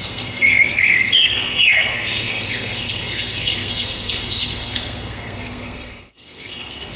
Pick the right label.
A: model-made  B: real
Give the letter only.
A